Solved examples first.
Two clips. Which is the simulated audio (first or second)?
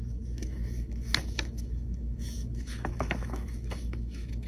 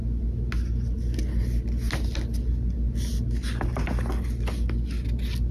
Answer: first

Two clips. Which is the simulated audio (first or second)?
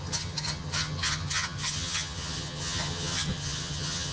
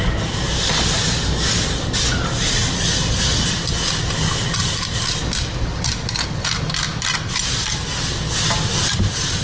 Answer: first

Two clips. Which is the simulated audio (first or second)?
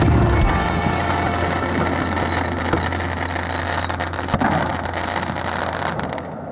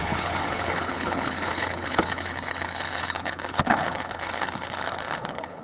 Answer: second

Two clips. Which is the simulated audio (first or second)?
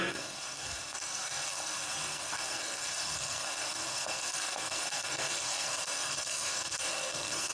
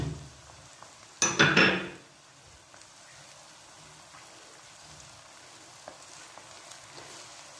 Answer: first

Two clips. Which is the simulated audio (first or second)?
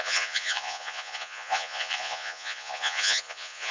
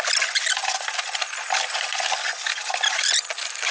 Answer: first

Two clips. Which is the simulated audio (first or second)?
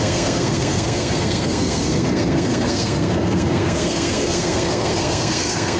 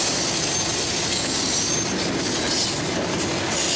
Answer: first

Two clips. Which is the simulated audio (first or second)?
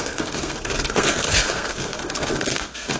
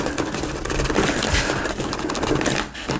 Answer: first